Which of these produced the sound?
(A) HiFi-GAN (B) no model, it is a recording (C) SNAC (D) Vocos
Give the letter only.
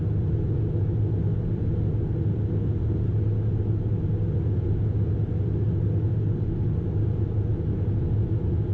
B